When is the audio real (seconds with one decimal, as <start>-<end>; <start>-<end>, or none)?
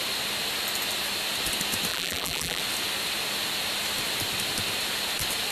0.0-1.9; 2.6-5.5